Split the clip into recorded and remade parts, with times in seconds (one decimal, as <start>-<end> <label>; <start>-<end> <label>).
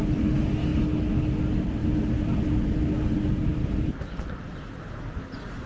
0.0-3.6 recorded; 3.6-4.8 remade; 4.8-5.7 recorded